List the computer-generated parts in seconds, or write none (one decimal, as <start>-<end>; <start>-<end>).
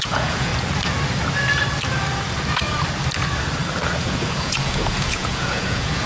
0.0-0.5; 4.0-6.1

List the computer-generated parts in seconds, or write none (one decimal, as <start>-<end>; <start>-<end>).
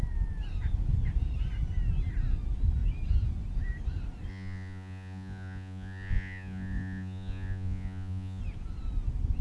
4.3-8.4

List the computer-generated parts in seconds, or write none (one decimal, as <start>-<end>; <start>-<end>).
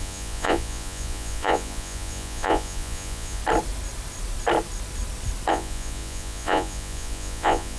0.0-3.4; 5.5-7.8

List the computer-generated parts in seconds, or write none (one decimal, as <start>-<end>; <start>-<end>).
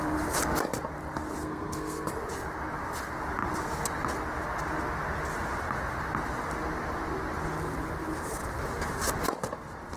1.4-2.1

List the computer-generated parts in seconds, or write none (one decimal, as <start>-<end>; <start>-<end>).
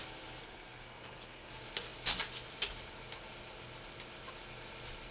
0.4-1.5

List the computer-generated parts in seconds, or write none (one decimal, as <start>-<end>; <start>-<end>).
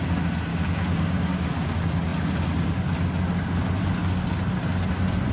0.5-1.5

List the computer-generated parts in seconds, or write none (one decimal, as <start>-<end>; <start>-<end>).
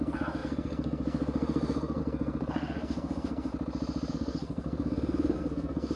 0.0-3.5; 4.1-6.0